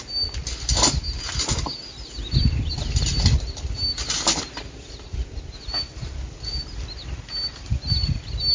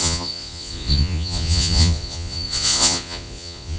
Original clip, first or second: first